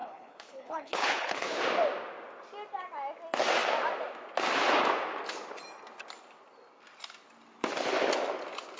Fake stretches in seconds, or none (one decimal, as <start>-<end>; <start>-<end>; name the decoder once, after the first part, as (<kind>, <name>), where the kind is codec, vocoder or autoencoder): 0.0-1.6 (codec, HILCodec)